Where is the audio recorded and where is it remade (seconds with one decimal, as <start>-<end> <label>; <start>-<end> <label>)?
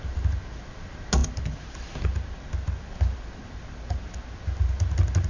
0.0-5.3 recorded